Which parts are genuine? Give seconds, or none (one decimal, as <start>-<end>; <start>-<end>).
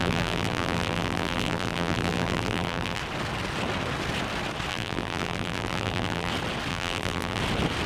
3.0-4.7; 6.3-6.7; 7.4-7.9